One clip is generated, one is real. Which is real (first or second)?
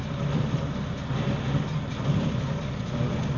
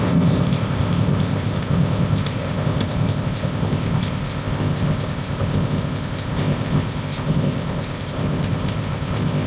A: first